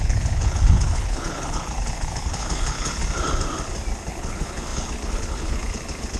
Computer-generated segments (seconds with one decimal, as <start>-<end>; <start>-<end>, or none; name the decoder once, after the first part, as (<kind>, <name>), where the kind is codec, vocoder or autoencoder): 0.0-3.0 (codec, HILCodec); 4.1-6.2